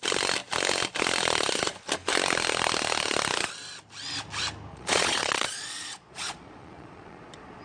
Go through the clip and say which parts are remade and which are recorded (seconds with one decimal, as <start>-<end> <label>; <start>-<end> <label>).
0.0-4.7 recorded; 4.7-7.6 remade